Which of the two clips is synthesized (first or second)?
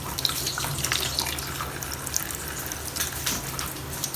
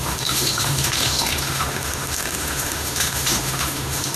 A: second